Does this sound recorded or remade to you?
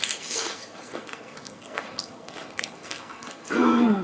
remade